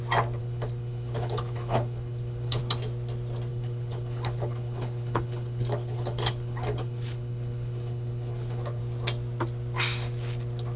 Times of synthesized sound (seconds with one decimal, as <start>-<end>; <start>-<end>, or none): 0.4-2.6; 3.5-8.8